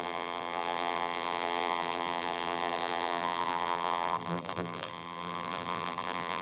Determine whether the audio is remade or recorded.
remade